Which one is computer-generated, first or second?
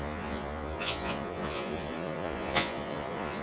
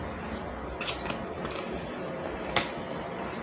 first